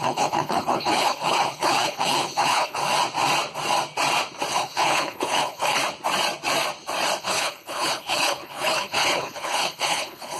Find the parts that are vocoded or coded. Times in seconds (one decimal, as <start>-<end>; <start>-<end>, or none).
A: 0.0-2.8; 4.5-5.8; 7.2-10.4